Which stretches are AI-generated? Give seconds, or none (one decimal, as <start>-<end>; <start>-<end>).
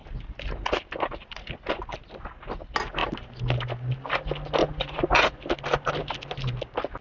4.6-5.4